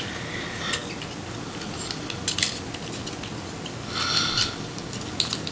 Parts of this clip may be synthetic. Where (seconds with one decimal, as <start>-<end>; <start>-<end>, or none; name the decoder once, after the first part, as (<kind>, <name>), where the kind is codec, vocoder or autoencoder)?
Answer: none